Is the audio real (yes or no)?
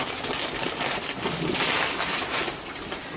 yes